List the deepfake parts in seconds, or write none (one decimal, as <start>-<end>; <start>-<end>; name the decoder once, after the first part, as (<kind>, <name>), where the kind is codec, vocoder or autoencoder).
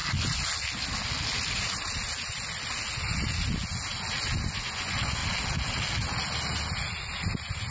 4.6-5.2 (vocoder, Vocos)